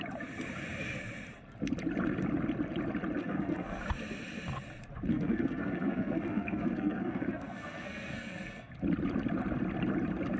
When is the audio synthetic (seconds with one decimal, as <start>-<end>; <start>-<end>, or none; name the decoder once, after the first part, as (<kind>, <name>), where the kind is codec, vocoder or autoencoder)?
3.2-3.8 (codec, SNAC); 5.1-8.7

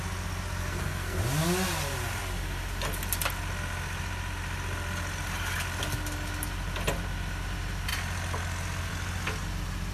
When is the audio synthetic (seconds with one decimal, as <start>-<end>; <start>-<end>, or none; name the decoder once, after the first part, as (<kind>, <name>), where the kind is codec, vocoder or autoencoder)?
0.6-1.2 (codec, SNAC)

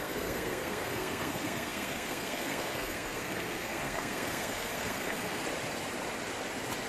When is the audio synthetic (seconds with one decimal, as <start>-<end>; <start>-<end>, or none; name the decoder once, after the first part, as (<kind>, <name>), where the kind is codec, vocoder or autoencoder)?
0.0-5.4 (codec, SNAC)

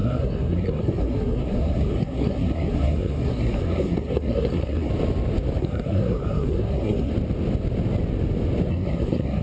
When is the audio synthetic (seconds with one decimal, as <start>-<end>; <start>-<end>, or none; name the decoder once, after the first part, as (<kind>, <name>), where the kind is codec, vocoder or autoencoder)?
0.0-4.9 (codec, SNAC); 5.6-7.1; 8.7-9.4